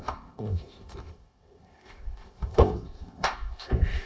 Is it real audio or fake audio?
fake